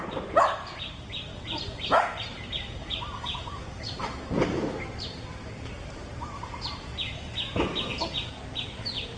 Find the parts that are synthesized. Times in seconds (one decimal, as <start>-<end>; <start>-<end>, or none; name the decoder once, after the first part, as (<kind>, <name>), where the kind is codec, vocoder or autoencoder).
0.0-6.9 (vocoder, BigVGAN v2); 8.4-9.2